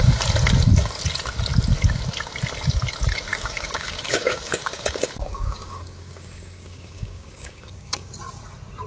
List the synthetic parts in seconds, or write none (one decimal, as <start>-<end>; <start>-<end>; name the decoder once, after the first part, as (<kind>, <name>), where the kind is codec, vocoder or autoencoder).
3.3-8.1 (codec, DAC)